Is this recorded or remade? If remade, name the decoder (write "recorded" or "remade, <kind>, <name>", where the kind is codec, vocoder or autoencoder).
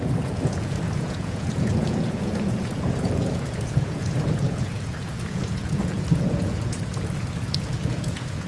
remade, vocoder, Vocos